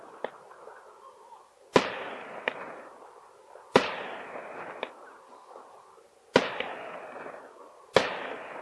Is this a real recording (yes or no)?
yes